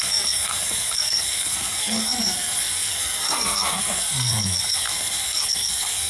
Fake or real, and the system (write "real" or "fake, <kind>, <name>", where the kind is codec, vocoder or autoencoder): fake, codec, SNAC